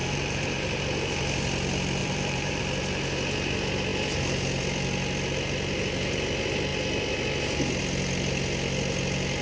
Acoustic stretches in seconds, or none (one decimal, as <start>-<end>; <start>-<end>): 0.8-2.0; 2.6-9.4